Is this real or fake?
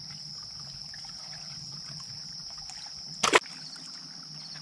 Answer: real